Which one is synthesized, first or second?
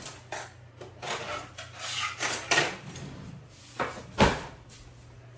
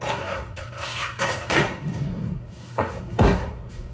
second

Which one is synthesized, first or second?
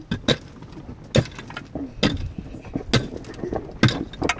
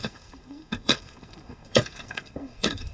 second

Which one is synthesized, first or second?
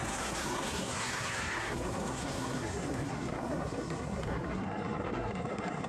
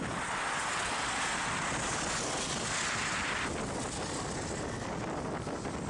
first